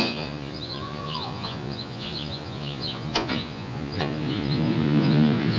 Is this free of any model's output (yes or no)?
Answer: no